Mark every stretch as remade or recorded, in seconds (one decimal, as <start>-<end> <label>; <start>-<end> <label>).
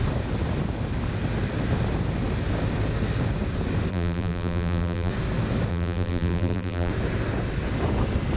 0.0-3.9 recorded; 3.9-5.1 remade; 5.1-5.7 recorded; 5.7-6.9 remade; 6.9-8.4 recorded